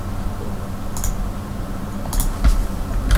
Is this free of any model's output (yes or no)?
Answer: yes